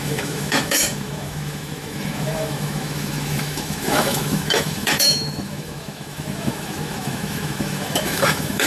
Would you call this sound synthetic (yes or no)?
yes